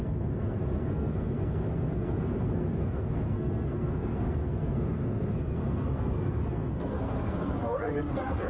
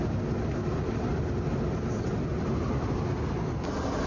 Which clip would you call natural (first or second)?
second